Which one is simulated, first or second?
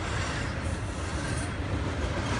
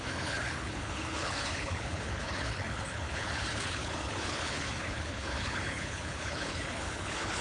second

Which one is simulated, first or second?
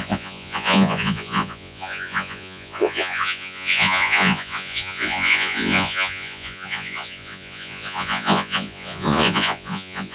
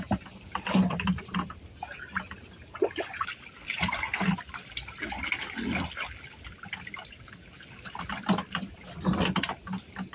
first